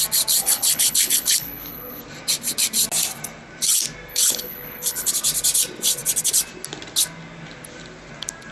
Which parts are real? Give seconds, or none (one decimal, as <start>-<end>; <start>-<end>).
0.0-0.4; 2.0-4.1; 5.1-8.5